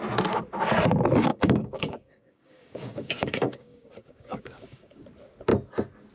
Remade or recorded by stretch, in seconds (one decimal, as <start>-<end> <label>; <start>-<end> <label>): 0.0-1.3 recorded; 1.3-5.0 remade; 5.0-6.1 recorded